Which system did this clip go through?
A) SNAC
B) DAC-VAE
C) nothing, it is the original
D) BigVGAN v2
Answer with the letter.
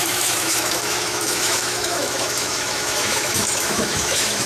B